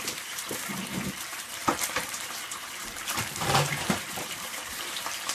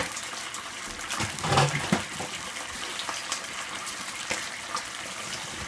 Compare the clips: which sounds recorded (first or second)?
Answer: second